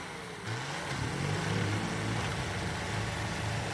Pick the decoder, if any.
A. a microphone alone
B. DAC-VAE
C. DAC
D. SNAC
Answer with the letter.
A